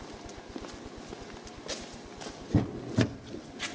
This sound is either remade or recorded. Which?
recorded